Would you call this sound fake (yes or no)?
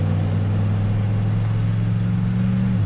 no